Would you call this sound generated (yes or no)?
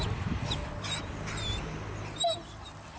no